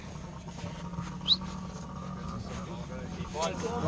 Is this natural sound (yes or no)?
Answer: yes